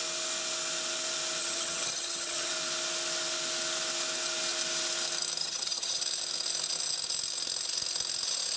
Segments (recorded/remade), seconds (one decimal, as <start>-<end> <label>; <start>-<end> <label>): 0.0-1.4 recorded; 1.4-2.5 remade; 2.5-5.4 recorded; 5.4-6.0 remade; 6.0-8.6 recorded

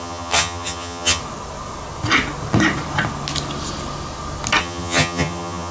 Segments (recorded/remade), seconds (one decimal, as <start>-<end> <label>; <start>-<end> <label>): 0.0-1.2 remade; 1.2-4.6 recorded; 4.6-5.7 remade

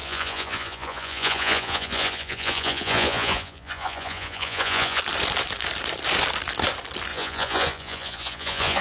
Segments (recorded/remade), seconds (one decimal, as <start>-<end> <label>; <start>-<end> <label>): 0.0-5.0 remade; 5.0-7.1 recorded; 7.1-8.8 remade

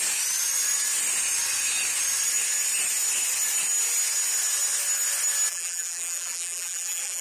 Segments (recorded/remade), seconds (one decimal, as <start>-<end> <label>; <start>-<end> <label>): 0.0-5.5 recorded; 5.5-7.2 remade

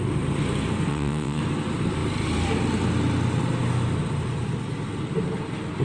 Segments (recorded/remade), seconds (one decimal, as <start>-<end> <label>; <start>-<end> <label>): 0.0-0.9 recorded; 0.9-1.4 remade; 1.4-5.8 recorded